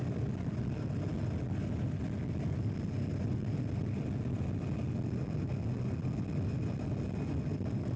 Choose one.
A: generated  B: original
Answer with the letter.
B